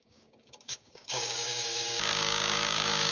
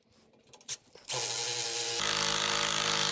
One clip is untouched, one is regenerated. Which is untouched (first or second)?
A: second